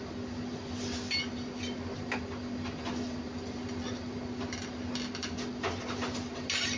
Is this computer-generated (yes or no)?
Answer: no